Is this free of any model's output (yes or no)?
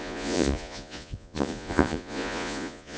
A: no